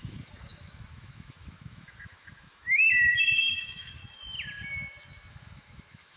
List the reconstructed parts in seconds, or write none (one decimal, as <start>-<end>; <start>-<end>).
0.0-4.0; 5.3-6.2